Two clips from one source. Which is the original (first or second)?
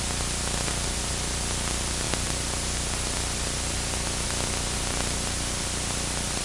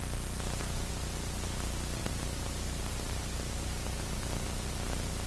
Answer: first